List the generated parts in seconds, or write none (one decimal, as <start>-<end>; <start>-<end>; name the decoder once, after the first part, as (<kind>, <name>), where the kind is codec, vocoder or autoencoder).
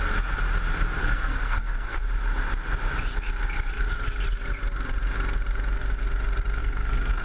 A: 1.0-2.0 (codec, SNAC); 6.6-7.2